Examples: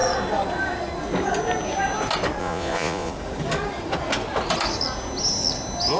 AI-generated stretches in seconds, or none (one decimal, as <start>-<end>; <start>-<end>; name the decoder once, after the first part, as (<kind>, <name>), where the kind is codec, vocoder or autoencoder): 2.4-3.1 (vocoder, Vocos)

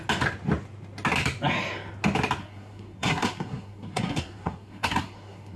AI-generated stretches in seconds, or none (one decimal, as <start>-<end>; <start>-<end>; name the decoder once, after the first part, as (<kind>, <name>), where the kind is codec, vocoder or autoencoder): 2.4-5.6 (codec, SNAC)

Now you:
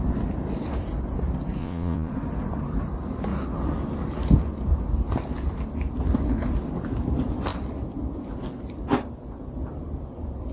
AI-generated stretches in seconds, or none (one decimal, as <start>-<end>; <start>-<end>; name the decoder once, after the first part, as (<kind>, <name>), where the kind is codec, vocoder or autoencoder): 1.6-2.1 (vocoder, Vocos)

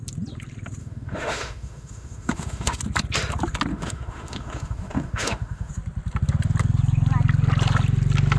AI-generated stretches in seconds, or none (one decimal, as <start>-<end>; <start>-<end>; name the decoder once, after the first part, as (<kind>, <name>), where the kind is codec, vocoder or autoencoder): 0.8-2.8 (autoencoder, DAC-VAE); 3.7-5.7

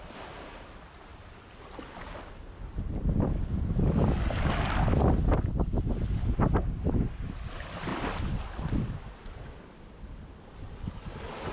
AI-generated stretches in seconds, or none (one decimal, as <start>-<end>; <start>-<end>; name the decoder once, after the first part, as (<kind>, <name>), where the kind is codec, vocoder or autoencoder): none

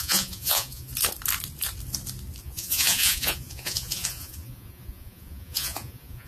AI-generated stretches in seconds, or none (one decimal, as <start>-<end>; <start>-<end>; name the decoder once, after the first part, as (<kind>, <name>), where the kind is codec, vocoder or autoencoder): 0.0-0.9 (vocoder, Vocos); 2.4-6.3